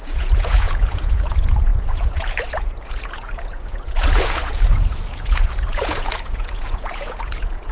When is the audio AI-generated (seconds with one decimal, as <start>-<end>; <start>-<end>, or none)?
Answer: 0.0-7.7